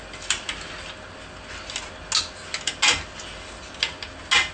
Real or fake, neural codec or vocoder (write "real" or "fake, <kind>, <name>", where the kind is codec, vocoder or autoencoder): real